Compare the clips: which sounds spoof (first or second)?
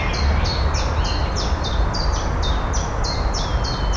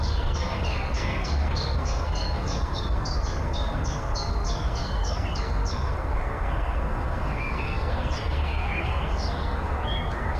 second